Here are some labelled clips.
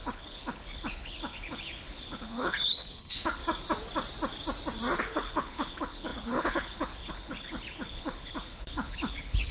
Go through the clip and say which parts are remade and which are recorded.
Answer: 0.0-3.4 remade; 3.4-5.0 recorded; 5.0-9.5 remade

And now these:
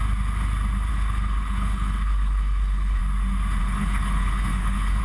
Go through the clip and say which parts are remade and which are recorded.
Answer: 0.0-0.9 recorded; 0.9-3.0 remade; 3.0-3.6 recorded; 3.6-5.0 remade